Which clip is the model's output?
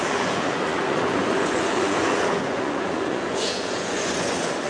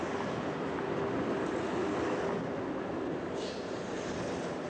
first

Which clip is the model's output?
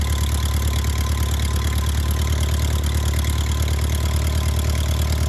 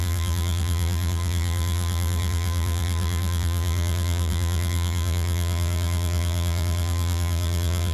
second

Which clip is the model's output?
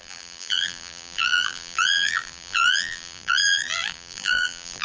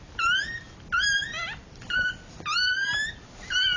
first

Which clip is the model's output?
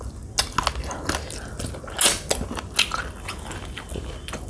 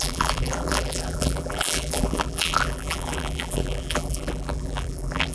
second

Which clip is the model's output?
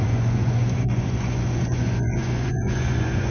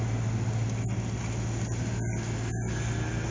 first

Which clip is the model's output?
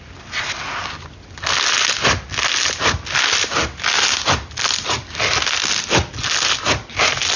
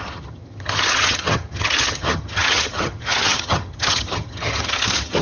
second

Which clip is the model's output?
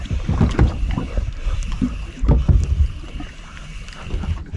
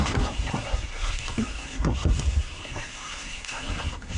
second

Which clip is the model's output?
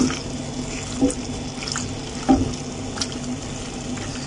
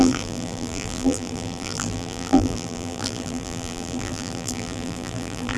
second